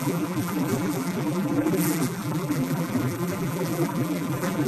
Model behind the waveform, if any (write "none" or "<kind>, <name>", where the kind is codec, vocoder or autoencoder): vocoder, BigVGAN v2